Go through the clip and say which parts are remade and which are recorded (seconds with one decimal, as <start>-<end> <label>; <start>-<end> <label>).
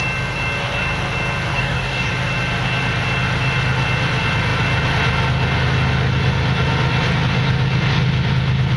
0.0-1.5 recorded; 1.5-2.1 remade; 2.1-8.8 recorded